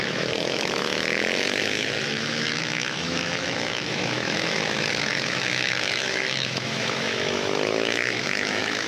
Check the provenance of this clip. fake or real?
fake